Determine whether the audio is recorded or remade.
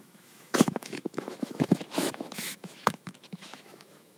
remade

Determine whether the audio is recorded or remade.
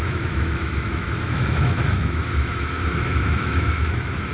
remade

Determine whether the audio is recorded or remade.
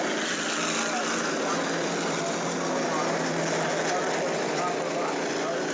recorded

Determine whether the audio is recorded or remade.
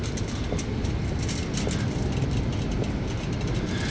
recorded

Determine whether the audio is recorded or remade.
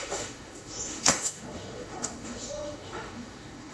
remade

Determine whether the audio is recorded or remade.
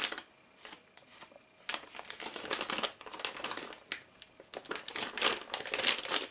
recorded